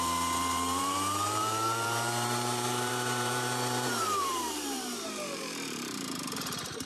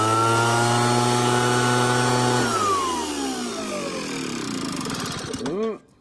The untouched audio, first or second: second